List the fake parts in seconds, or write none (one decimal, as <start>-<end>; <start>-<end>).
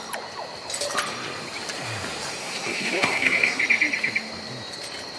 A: 2.4-3.6